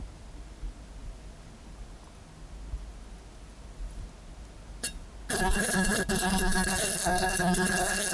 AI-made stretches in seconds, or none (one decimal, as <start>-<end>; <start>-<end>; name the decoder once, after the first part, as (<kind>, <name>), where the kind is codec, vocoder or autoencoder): none

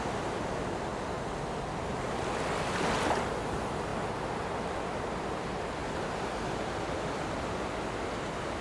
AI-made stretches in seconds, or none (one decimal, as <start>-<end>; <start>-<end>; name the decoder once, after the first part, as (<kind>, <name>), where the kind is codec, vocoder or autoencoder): none

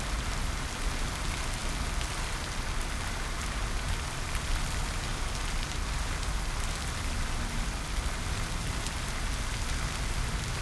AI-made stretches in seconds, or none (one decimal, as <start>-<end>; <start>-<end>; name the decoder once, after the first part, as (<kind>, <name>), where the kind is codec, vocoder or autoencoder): none

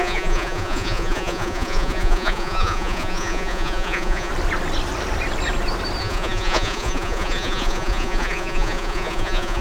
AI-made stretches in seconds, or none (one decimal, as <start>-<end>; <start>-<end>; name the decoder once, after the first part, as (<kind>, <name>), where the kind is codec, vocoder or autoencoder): 0.0-4.3 (vocoder, Vocos); 6.0-9.6

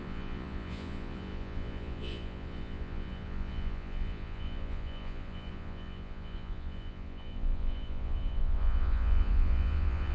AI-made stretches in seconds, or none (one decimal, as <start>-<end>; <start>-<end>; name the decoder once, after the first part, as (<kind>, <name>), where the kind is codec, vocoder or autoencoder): 0.0-10.1 (vocoder, Vocos)

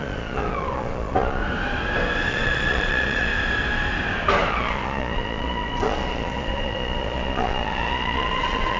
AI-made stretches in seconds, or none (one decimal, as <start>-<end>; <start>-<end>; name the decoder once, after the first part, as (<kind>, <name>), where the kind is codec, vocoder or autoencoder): 0.0-1.4 (vocoder, Vocos); 2.3-3.3; 4.5-8.8

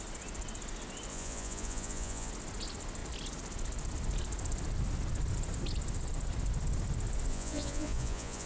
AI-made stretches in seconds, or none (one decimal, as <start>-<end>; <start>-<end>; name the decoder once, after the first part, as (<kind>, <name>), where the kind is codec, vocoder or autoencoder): 1.1-2.3 (vocoder, Vocos); 7.3-8.5

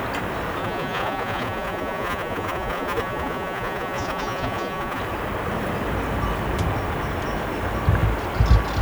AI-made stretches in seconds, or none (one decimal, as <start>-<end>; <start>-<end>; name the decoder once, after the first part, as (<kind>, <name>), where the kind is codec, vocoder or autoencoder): 0.6-5.0 (vocoder, Vocos)